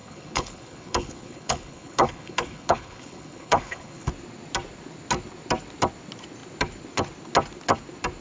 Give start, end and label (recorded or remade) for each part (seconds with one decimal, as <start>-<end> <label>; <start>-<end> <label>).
0.0-4.1 remade; 4.1-8.2 recorded

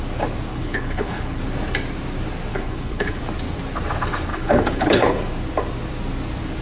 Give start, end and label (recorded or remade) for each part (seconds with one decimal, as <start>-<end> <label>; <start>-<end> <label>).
0.0-0.5 recorded; 0.5-1.4 remade; 1.4-2.5 recorded; 2.5-3.2 remade; 3.2-4.3 recorded; 4.3-5.1 remade; 5.1-6.6 recorded

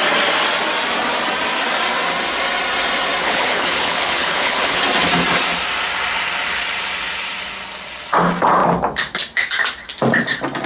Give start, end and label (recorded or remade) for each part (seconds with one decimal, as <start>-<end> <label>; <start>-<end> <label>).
0.0-3.2 recorded; 3.2-4.8 remade; 4.8-10.7 recorded

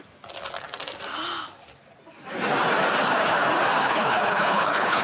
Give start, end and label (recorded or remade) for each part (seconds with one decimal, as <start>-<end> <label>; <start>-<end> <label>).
0.0-3.8 recorded; 3.8-5.0 remade

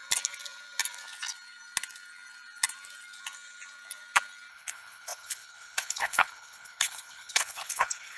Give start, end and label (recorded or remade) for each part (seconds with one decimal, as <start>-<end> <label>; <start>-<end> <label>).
0.0-4.5 recorded; 4.5-8.2 remade

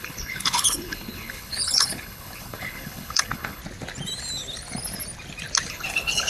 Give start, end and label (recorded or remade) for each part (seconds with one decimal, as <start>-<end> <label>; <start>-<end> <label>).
0.0-3.6 remade; 3.6-5.7 recorded; 5.7-6.3 remade